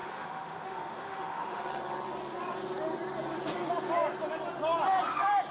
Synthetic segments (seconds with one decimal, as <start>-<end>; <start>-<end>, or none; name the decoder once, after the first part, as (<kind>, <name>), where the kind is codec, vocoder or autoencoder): 0.0-1.6 (autoencoder, DAC-VAE)